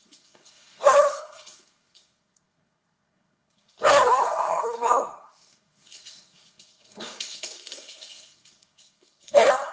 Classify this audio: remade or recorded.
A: remade